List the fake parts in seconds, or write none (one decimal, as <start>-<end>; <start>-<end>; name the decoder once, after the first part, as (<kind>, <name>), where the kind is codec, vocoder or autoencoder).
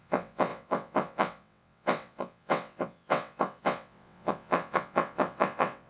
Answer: 0.0-5.9 (vocoder, WaveNeXt)